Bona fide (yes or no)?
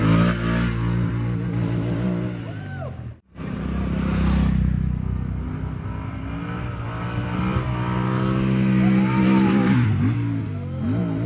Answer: yes